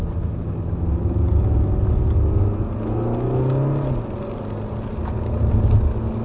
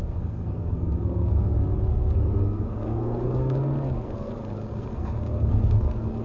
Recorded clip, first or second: first